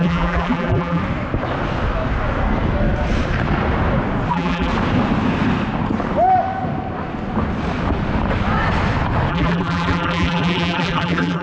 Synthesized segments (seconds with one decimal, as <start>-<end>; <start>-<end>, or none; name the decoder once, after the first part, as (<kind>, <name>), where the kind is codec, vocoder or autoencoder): 0.0-1.0 (vocoder, BigVGAN v2); 4.3-4.7; 9.3-11.4